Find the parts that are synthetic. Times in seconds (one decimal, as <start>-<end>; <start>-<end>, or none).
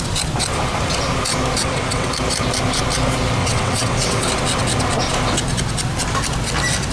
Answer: 1.6-2.1; 3.4-4.3